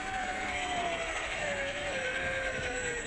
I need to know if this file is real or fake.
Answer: fake